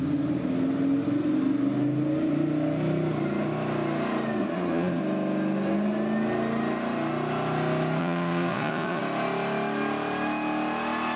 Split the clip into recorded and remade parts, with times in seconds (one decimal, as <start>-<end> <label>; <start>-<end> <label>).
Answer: 0.0-4.4 recorded; 4.4-5.0 remade; 5.0-8.0 recorded; 8.0-9.0 remade; 9.0-11.2 recorded